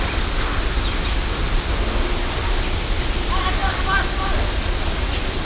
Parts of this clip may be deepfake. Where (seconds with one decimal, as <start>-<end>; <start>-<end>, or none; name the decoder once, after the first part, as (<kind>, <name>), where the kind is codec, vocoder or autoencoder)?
none